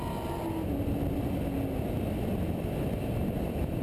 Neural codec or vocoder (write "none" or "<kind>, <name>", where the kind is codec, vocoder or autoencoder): none